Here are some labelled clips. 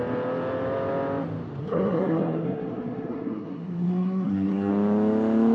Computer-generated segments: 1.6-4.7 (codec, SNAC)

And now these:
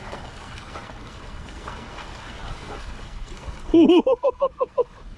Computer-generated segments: 0.0-5.2 (codec, SNAC)

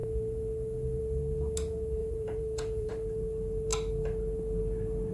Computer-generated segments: 2.0-2.9 (vocoder, Vocos)